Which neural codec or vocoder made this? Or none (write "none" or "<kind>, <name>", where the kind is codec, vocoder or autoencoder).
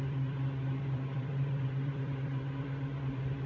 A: vocoder, BigVGAN v2